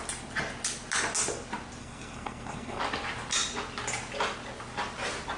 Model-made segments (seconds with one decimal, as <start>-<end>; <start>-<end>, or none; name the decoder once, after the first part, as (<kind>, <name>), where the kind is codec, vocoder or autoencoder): 1.8-2.8 (codec, SNAC)